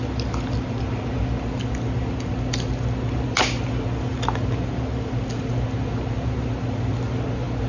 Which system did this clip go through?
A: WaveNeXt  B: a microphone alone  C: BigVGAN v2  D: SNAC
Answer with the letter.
B